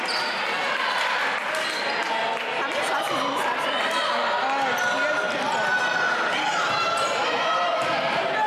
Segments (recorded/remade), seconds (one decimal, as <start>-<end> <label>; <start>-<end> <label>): 0.0-8.5 recorded

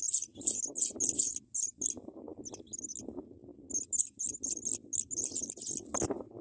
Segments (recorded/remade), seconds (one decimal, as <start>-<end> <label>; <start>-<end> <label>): 0.0-6.4 recorded

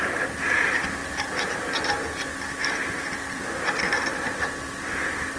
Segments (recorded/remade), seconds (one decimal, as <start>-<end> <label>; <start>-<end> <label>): 0.0-5.4 recorded

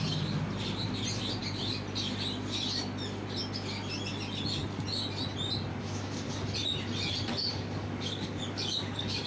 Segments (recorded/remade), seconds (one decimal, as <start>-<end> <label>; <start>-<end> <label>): 0.0-5.7 recorded; 5.7-6.3 remade; 6.3-7.5 recorded; 7.5-9.3 remade

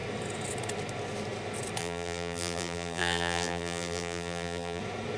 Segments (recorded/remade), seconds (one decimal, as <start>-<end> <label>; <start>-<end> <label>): 0.0-1.8 recorded; 1.8-4.8 remade; 4.8-5.2 recorded

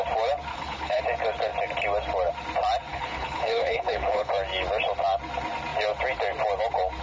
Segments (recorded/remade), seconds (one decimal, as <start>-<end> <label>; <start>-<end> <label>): 0.0-0.5 recorded; 0.5-1.0 remade; 1.0-2.9 recorded; 2.9-4.3 remade; 4.3-7.0 recorded